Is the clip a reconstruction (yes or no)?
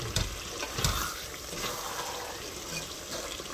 no